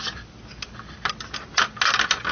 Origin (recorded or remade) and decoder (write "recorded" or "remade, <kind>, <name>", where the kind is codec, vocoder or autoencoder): recorded